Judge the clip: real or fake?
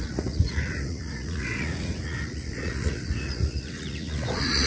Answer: fake